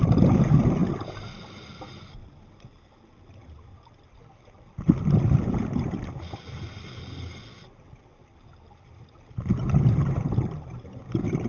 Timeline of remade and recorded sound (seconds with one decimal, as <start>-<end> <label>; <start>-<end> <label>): 0.0-11.5 recorded